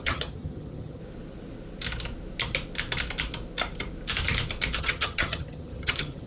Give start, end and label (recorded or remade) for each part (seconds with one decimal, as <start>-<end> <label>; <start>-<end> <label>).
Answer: 0.0-1.0 remade; 1.0-4.8 recorded; 4.8-6.3 remade